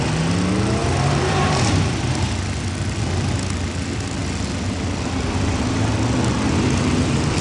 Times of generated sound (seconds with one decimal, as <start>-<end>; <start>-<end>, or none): 0.8-2.3